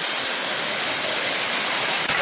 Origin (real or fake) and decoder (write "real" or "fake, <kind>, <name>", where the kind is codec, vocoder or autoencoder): real